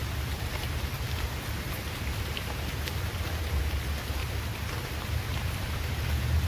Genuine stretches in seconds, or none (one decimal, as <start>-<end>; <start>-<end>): 3.2-4.2; 5.9-6.5